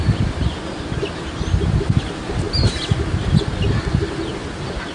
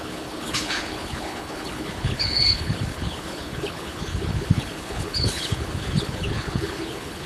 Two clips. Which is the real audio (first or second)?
first